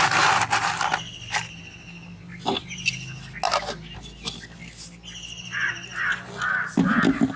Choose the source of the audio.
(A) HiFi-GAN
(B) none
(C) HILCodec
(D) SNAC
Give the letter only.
B